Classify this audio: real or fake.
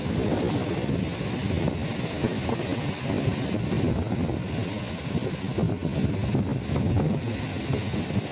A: real